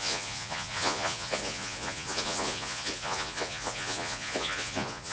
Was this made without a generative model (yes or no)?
no